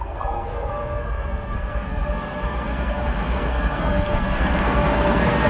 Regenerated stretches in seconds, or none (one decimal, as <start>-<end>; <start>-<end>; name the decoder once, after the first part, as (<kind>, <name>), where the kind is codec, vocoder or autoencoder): 0.0-5.5 (codec, SNAC)